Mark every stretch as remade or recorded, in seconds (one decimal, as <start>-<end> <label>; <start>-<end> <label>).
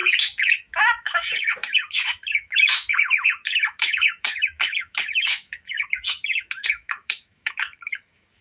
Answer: 0.0-8.4 remade